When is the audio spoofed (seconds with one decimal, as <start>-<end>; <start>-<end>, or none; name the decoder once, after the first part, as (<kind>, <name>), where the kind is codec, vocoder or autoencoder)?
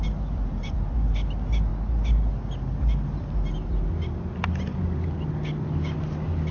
none